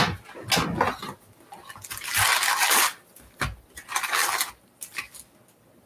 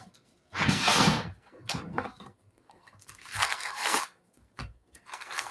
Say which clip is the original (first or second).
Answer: first